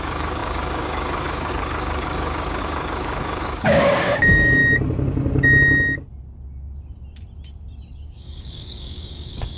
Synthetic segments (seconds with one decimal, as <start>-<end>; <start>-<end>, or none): 0.0-4.6; 7.9-9.6